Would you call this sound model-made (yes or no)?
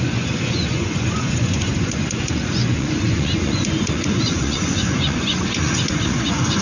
yes